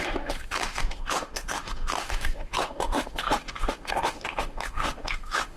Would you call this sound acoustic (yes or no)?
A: no